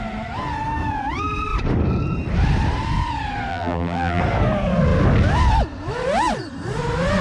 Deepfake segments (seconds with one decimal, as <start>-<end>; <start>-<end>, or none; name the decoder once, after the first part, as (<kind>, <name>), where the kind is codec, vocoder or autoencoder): 3.5-4.2 (vocoder, BigVGAN v2)